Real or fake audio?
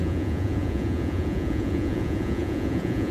fake